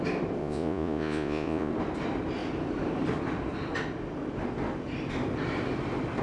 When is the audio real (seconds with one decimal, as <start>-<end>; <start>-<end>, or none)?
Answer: 0.0-0.4; 1.7-6.2